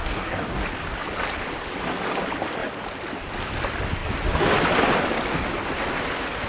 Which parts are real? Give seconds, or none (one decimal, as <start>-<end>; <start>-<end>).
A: 0.6-6.5